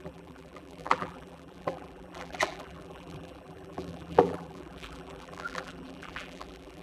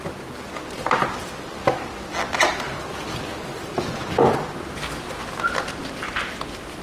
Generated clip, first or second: first